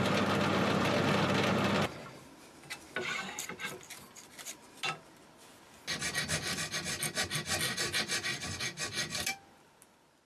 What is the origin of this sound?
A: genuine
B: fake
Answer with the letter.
A